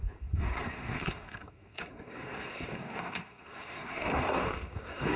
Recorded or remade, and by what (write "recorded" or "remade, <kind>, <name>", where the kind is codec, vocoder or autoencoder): remade, codec, SNAC